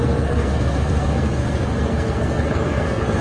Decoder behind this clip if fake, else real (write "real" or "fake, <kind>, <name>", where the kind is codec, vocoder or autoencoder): fake, codec, SNAC